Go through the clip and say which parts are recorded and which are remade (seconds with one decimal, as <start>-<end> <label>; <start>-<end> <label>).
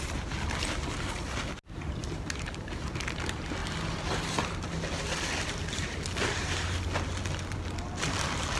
0.0-8.6 recorded